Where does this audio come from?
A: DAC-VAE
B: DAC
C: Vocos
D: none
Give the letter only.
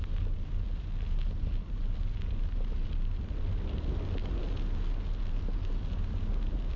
D